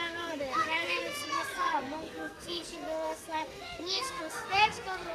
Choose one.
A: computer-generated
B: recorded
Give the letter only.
A